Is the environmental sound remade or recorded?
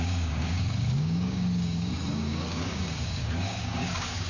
remade